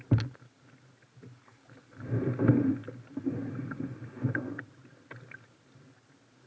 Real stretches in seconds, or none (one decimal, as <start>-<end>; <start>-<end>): 0.0-6.5